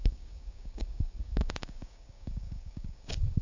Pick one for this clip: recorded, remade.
remade